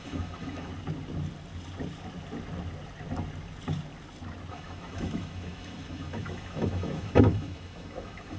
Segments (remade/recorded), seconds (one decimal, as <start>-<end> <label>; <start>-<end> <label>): 0.0-0.7 remade; 0.7-4.5 recorded; 4.5-8.4 remade